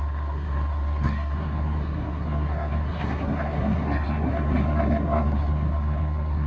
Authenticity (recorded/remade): remade